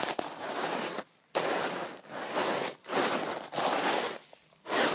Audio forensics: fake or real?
real